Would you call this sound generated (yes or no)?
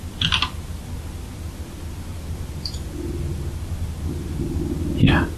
no